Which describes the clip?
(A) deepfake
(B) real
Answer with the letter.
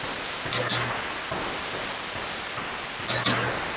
B